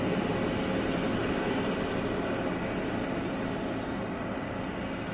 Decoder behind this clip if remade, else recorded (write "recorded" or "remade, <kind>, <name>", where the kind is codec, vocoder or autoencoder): recorded